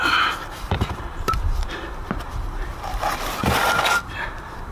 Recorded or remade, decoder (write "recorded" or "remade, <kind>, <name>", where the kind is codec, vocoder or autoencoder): remade, vocoder, BigVGAN v2